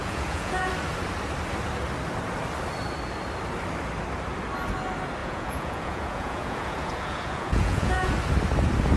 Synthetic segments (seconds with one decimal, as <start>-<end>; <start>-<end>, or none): 0.0-0.7; 5.2-8.1